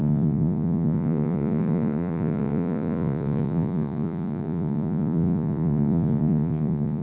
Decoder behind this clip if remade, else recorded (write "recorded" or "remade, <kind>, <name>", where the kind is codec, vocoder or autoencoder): remade, vocoder, Vocos